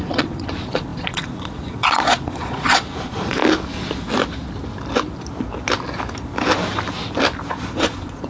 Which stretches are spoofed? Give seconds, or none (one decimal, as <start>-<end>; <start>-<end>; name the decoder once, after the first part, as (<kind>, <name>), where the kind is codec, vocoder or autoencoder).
0.0-3.4 (vocoder, Vocos); 7.5-8.3